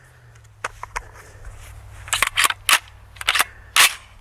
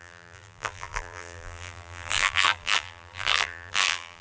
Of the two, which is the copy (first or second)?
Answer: second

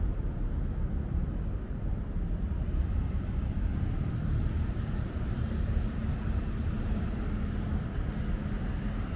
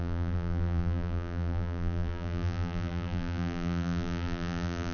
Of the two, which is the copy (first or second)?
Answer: second